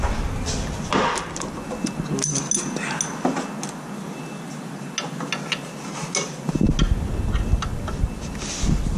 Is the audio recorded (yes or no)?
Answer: yes